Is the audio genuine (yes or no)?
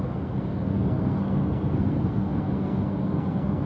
no